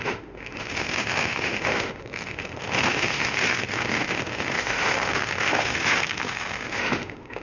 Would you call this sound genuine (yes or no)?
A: no